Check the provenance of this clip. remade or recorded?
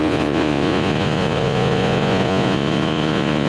remade